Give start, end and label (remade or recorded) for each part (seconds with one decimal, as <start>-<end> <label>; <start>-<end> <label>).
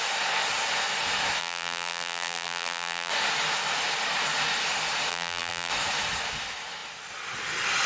0.0-1.4 recorded; 1.4-3.1 remade; 3.1-5.1 recorded; 5.1-5.7 remade; 5.7-7.9 recorded